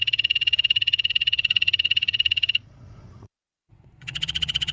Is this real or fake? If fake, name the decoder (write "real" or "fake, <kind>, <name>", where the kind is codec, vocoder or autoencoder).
fake, vocoder, Vocos